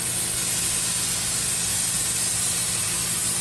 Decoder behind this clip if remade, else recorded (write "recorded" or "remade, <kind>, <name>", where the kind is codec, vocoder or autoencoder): recorded